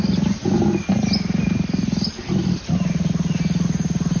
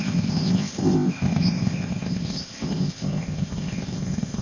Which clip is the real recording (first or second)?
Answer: first